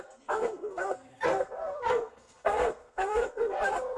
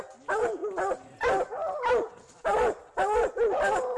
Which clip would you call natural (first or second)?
second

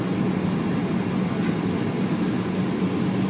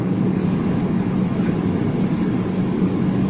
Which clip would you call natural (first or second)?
first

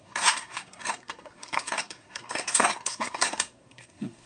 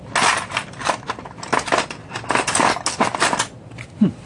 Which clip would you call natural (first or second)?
second